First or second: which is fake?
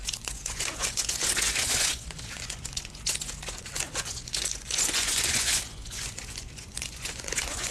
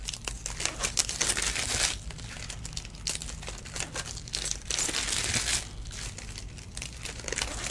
first